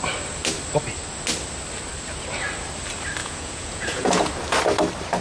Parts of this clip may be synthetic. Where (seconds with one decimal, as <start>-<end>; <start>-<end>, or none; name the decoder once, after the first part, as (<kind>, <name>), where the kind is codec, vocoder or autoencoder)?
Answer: 3.2-4.3 (vocoder, Vocos)

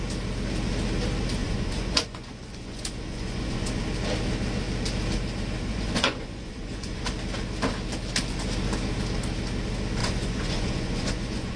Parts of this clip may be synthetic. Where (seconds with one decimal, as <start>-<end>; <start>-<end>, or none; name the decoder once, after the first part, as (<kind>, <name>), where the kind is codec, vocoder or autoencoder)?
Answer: 1.4-3.8 (vocoder, Vocos); 5.7-7.0; 10.0-11.6

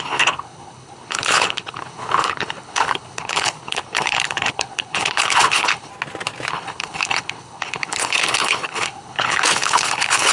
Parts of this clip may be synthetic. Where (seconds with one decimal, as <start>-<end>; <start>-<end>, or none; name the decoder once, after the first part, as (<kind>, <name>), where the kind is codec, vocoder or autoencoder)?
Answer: 0.0-5.9 (codec, HILCodec); 6.5-10.3

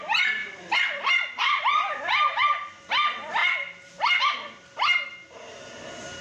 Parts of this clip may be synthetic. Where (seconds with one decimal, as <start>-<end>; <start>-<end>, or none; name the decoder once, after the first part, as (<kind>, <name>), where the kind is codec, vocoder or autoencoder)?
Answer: 0.4-2.0 (vocoder, BigVGAN v2); 3.4-4.2